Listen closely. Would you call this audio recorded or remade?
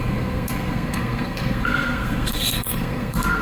remade